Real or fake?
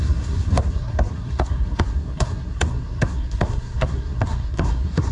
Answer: fake